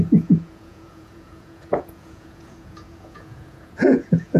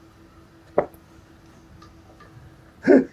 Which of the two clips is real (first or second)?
second